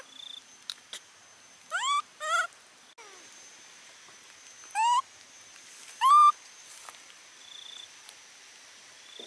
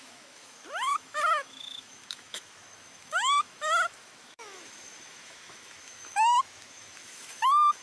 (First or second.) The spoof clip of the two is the second